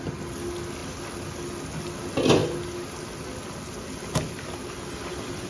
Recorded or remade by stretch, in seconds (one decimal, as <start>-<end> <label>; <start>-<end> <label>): 0.0-5.5 recorded